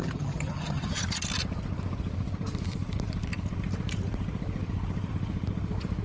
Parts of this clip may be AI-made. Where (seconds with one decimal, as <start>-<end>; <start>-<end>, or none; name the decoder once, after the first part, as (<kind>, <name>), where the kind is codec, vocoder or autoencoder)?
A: 0.0-1.0 (vocoder, HiFi-GAN)

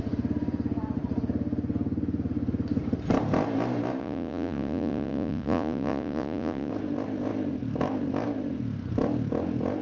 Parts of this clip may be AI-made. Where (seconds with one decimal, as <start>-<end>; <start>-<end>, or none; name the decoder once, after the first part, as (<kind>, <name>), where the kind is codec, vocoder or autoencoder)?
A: 4.0-6.7 (vocoder, Vocos)

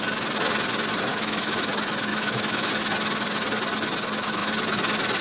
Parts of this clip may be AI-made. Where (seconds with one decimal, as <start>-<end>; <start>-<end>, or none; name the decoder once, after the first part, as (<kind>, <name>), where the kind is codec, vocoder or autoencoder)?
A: 1.1-1.7 (autoencoder, DAC-VAE); 2.1-2.7

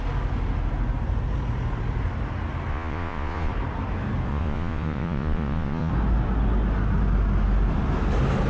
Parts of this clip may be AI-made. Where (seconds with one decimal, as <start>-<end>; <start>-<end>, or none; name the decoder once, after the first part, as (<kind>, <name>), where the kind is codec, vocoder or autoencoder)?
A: 2.7-3.5 (vocoder, Vocos); 4.3-5.9

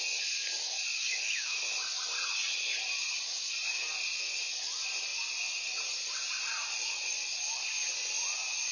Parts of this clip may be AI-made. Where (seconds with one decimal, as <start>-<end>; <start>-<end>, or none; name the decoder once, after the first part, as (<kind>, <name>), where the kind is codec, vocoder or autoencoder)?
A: 1.0-1.6 (autoencoder, DAC-VAE)